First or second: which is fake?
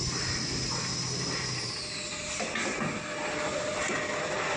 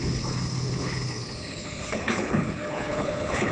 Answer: second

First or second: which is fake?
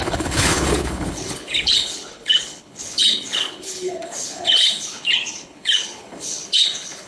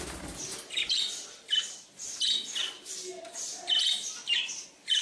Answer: first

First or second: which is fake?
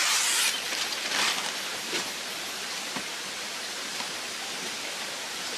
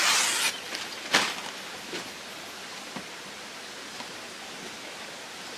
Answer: first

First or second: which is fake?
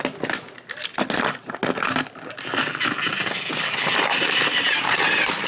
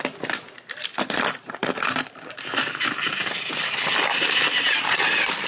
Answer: second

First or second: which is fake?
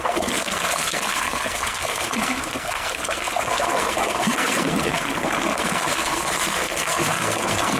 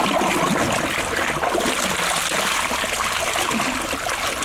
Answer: first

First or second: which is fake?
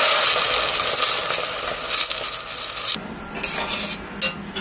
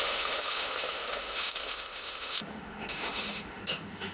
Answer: second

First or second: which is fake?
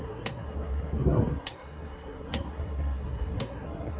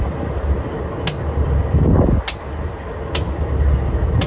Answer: first